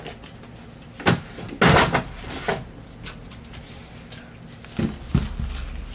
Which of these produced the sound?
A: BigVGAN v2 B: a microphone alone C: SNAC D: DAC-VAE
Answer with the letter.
B